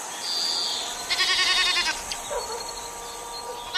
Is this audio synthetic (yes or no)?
no